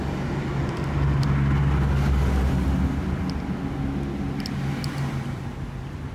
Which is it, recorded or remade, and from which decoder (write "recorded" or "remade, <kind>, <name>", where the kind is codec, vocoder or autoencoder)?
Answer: recorded